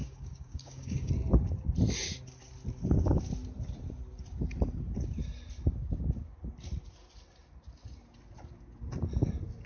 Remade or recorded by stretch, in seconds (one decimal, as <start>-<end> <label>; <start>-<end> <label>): 0.0-1.1 remade; 1.1-9.7 recorded